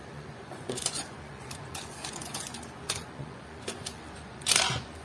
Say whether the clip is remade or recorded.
remade